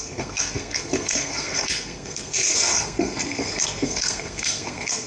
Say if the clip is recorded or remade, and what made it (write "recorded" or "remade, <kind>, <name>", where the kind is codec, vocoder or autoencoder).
remade, codec, SNAC